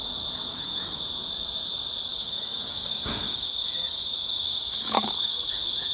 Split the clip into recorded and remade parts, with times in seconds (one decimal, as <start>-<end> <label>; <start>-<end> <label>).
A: 0.0-0.5 recorded; 0.5-1.0 remade; 1.0-2.1 recorded; 2.1-5.9 remade